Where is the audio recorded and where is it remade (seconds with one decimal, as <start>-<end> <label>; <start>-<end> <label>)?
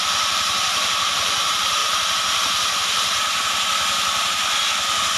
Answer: 0.0-1.8 remade; 1.8-5.2 recorded